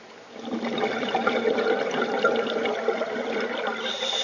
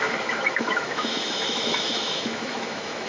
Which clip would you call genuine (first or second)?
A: first